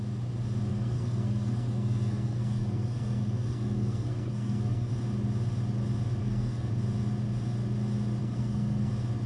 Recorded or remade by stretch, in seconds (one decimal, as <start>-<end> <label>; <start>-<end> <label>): 0.0-0.7 recorded; 0.7-4.9 remade; 4.9-6.2 recorded; 6.2-6.7 remade; 6.7-8.2 recorded; 8.2-8.9 remade; 8.9-9.3 recorded